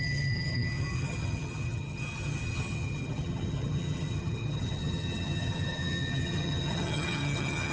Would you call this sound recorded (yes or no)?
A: no